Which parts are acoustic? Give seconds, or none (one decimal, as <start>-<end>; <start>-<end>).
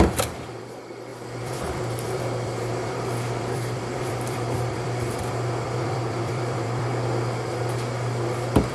6.9-8.7